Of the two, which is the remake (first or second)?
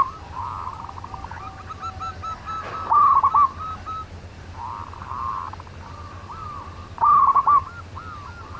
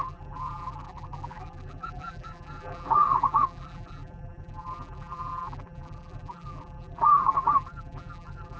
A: second